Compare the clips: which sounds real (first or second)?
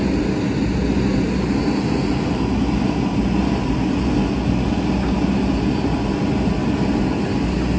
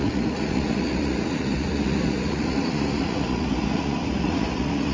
first